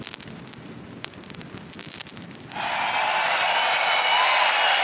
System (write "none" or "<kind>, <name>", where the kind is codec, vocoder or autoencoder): vocoder, BigVGAN v2